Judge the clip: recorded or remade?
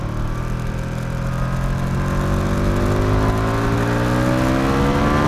recorded